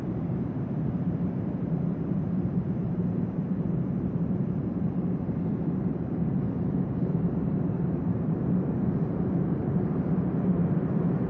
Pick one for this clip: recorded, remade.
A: remade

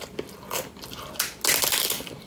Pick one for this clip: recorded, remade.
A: recorded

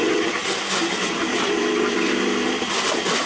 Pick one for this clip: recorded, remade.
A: remade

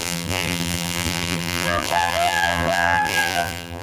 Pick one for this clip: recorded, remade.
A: remade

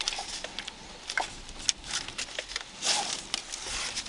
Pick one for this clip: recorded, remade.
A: recorded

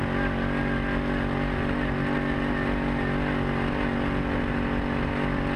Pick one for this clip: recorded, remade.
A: recorded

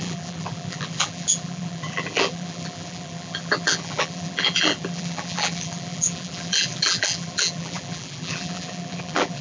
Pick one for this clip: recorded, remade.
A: remade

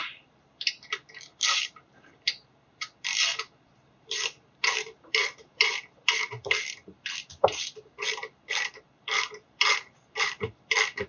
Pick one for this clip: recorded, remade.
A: remade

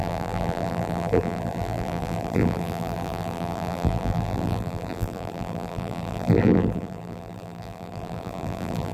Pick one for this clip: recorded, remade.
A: remade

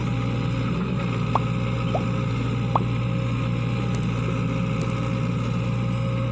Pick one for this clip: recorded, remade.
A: recorded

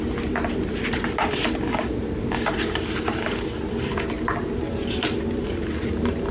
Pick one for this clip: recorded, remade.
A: recorded